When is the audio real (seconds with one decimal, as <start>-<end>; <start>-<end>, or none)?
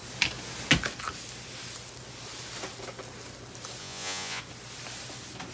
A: 0.0-3.8; 4.4-5.5